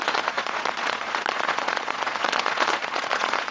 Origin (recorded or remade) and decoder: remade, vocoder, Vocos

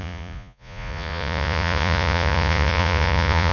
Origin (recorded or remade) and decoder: remade, vocoder, Vocos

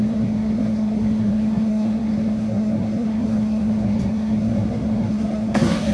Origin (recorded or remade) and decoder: remade, codec, SNAC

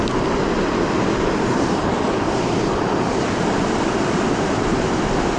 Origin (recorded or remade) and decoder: remade, vocoder, BigVGAN v2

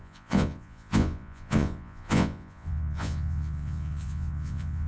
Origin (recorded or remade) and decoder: remade, vocoder, Vocos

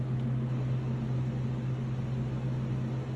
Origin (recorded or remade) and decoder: recorded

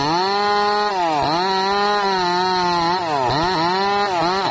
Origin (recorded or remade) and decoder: recorded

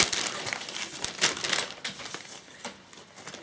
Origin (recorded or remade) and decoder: recorded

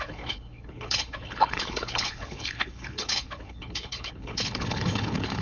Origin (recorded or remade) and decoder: remade, codec, HILCodec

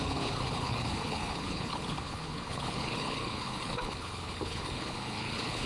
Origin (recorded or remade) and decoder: remade, codec, HILCodec